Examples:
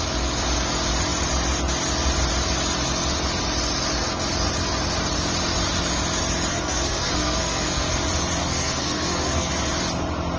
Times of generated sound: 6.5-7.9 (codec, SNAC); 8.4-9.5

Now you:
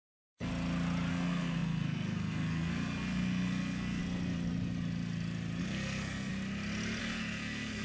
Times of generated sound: 0.0-0.5 (codec, SNAC); 1.1-4.0; 5.6-6.3; 7.0-7.8

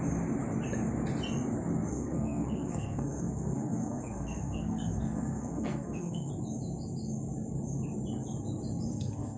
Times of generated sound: 1.9-6.3 (codec, SNAC); 8.9-9.4

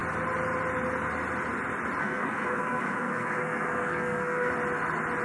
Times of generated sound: 2.0-4.5 (codec, SNAC)

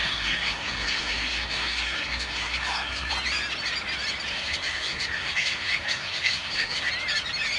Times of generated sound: 0.0-3.1 (codec, SNAC); 4.3-6.9